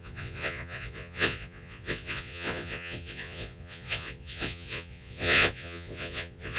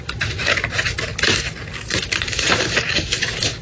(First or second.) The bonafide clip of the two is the second